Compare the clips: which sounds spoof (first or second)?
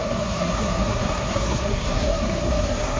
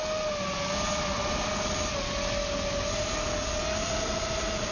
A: first